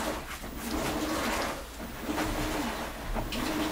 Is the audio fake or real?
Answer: real